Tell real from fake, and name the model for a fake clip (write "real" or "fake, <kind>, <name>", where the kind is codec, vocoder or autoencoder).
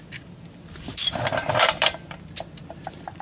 fake, vocoder, BigVGAN v2